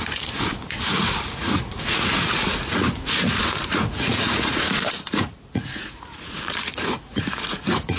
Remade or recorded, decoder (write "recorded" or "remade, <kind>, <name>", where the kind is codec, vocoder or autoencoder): remade, vocoder, Vocos